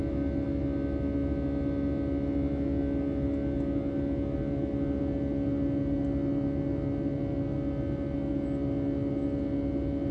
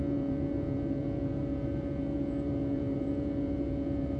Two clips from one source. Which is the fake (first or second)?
second